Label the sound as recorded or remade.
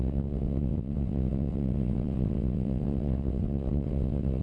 remade